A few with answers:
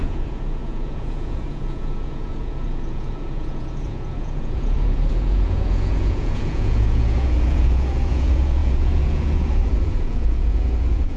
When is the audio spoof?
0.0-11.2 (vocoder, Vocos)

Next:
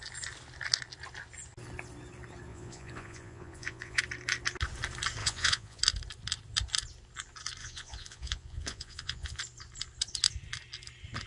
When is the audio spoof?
2.5-4.0 (vocoder, Vocos); 5.2-5.8; 7.6-9.4

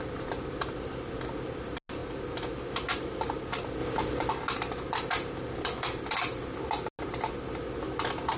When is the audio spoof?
none

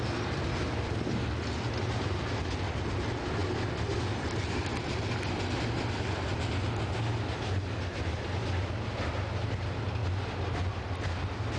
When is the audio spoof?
none